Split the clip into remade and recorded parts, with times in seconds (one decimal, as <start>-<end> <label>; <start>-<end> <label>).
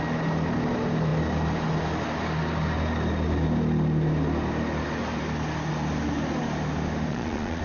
0.0-7.1 recorded; 7.1-7.6 remade